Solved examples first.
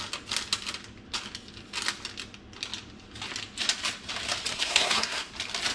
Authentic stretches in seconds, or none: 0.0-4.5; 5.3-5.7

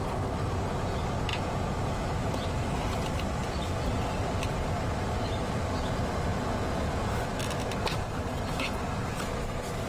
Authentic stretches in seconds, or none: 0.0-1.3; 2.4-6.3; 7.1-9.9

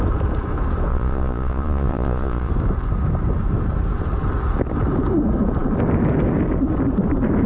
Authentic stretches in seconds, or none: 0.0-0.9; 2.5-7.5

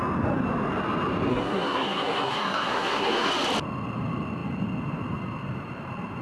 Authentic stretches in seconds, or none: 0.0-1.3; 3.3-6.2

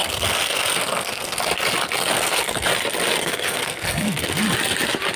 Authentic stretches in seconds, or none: 1.4-2.1; 2.7-3.2; 4.4-5.2